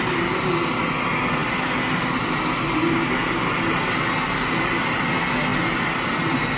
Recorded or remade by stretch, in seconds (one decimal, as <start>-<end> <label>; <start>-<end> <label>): 0.0-6.6 recorded

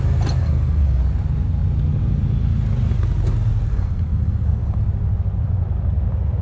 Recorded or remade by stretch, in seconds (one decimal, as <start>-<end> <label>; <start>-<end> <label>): 0.0-0.4 recorded; 0.4-1.0 remade; 1.0-3.7 recorded; 3.7-4.8 remade; 4.8-6.4 recorded

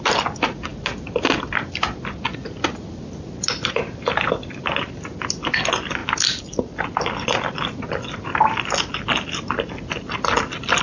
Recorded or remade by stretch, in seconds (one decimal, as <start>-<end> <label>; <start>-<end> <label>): 0.0-10.8 recorded

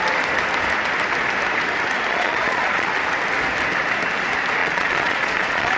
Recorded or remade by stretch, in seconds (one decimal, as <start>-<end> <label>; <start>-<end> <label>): 0.0-2.1 recorded; 2.1-2.9 remade; 2.9-4.6 recorded; 4.6-5.8 remade